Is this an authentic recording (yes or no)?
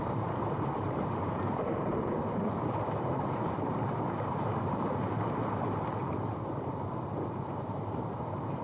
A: no